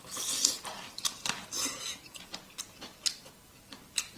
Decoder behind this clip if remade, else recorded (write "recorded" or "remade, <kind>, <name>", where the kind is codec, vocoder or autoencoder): recorded